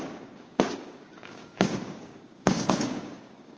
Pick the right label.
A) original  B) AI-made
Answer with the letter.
B